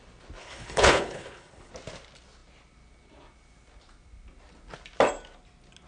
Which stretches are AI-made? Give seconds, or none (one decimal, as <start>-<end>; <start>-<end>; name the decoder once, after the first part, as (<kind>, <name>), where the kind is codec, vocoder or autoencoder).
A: 0.4-1.7 (codec, HILCodec)